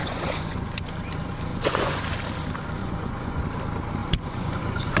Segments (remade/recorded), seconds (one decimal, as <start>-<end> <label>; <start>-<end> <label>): 0.0-0.9 remade; 0.9-1.5 recorded; 1.5-2.0 remade; 2.0-2.8 recorded; 2.8-3.4 remade; 3.4-4.0 recorded; 4.0-5.0 remade